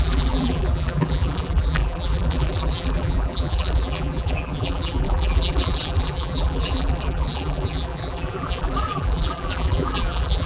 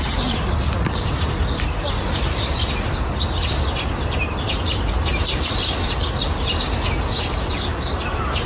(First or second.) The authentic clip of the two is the second